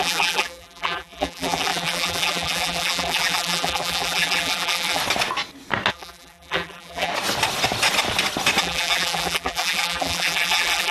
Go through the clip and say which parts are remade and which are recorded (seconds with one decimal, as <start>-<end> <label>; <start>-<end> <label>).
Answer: 0.0-5.0 remade; 5.0-5.9 recorded; 5.9-7.1 remade; 7.1-8.6 recorded; 8.6-10.9 remade